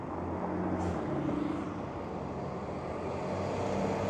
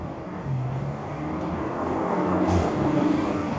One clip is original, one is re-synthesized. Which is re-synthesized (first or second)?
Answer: second